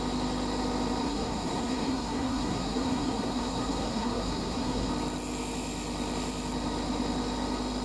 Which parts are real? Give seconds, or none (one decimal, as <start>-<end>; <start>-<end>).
0.0-1.0; 4.9-7.8